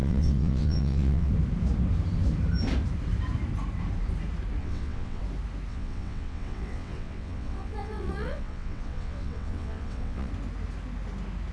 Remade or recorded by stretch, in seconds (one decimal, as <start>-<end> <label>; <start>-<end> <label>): 0.0-1.3 remade; 1.3-4.6 recorded; 4.6-5.2 remade; 5.2-5.7 recorded; 5.7-10.3 remade; 10.3-11.5 recorded